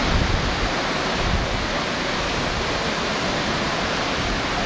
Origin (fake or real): real